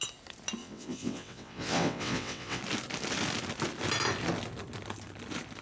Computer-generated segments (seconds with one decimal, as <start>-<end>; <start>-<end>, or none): 0.6-2.6